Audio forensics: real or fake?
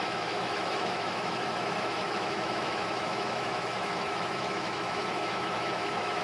fake